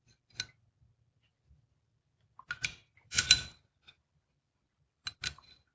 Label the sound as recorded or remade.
recorded